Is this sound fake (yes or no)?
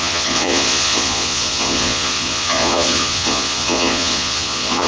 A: yes